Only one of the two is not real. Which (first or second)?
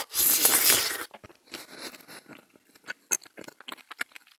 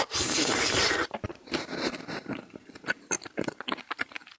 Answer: second